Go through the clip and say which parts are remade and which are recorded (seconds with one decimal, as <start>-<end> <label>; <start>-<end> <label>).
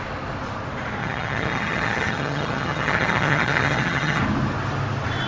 0.0-1.0 recorded; 1.0-4.2 remade; 4.2-5.3 recorded